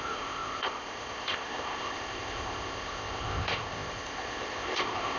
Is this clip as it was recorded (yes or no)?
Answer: no